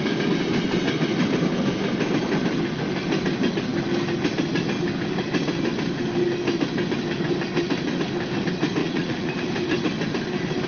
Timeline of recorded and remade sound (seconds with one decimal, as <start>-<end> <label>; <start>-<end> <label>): 0.0-8.8 recorded; 8.8-9.3 remade; 9.3-10.7 recorded